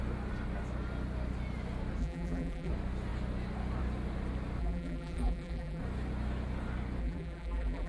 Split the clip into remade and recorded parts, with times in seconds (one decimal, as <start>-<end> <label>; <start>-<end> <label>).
0.0-2.0 recorded; 2.0-2.7 remade; 2.7-4.6 recorded; 4.6-5.8 remade; 5.8-7.0 recorded; 7.0-7.9 remade